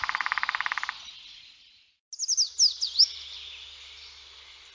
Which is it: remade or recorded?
recorded